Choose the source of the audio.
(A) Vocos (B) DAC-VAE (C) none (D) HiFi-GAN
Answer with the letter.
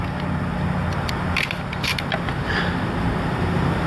C